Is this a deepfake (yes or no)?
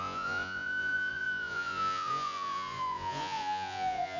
yes